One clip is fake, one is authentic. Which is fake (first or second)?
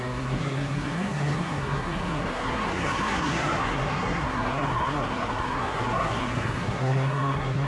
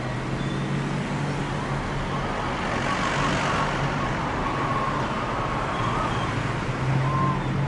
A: first